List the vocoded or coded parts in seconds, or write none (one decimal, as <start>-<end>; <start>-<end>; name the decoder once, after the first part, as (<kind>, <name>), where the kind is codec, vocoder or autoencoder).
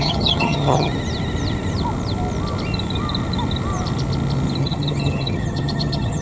0.0-0.9 (vocoder, HiFi-GAN); 4.6-6.2